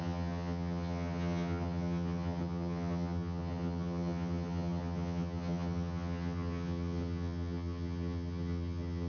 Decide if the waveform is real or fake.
fake